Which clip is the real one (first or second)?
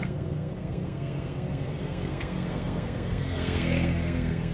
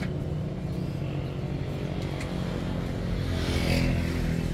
second